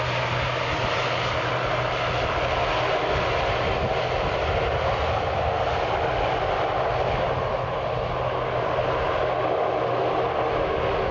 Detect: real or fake real